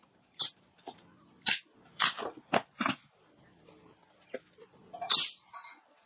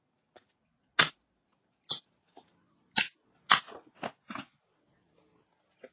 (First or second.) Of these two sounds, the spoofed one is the first